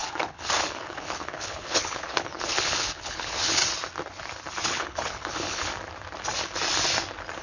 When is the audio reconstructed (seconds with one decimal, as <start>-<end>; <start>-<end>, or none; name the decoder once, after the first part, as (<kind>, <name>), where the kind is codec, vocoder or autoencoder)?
0.0-3.6 (codec, HILCodec); 4.6-5.7